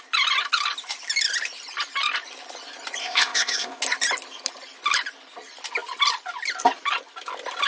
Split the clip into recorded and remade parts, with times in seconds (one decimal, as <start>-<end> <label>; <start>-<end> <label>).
0.0-3.0 recorded; 3.0-3.8 remade; 3.8-7.7 recorded